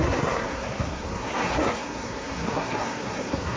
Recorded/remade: remade